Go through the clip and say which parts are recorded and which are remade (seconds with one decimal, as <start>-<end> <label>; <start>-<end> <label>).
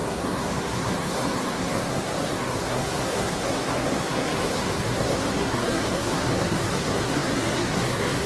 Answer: 0.0-8.3 remade